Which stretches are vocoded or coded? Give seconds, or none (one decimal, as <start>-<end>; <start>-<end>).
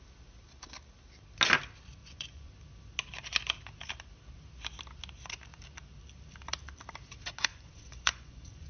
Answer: 2.0-2.5; 7.5-8.7